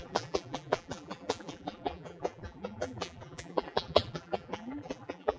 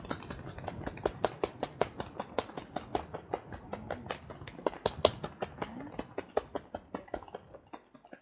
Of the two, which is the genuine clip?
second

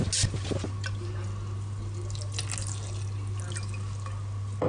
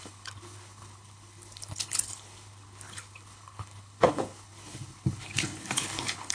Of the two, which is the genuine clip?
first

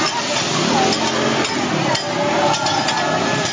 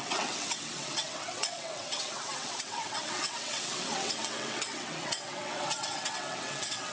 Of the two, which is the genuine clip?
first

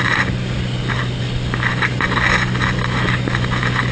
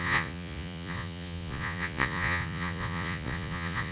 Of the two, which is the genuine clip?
first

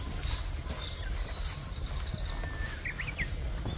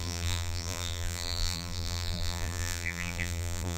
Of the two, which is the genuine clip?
first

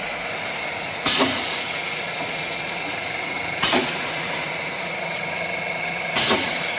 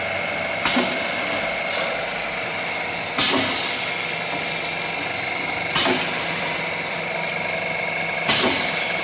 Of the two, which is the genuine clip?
second